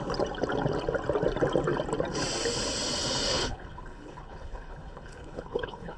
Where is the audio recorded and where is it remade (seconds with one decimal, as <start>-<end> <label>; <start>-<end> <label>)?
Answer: 0.0-3.3 recorded; 3.3-6.0 remade